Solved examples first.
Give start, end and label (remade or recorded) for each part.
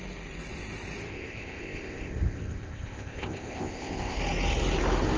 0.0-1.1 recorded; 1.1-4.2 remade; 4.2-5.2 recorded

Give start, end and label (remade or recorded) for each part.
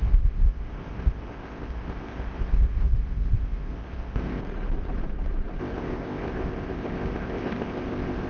0.0-4.4 remade; 4.4-5.6 recorded; 5.6-8.3 remade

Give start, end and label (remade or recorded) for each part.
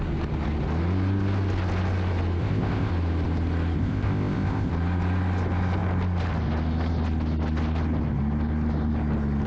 0.0-2.4 recorded; 2.4-2.9 remade; 2.9-3.8 recorded; 3.8-4.7 remade; 4.7-9.5 recorded